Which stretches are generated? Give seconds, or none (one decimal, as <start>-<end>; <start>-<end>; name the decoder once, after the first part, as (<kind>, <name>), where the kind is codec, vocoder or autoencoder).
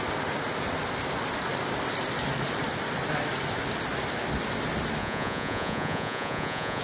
5.0-6.8 (vocoder, Vocos)